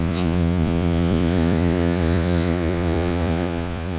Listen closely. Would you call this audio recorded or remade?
remade